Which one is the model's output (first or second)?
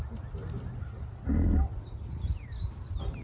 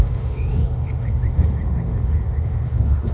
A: second